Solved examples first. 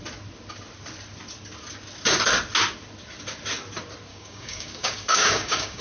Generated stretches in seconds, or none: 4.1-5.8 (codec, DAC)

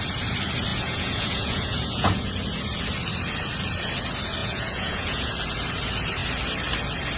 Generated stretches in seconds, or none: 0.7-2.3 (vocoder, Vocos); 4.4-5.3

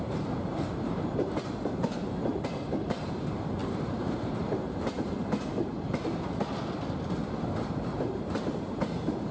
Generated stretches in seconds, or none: 0.0-2.3 (vocoder, BigVGAN v2); 2.8-5.7; 8.0-9.3

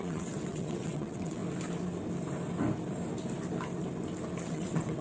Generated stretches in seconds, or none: 0.0-1.4 (vocoder, WaveNeXt); 4.4-5.0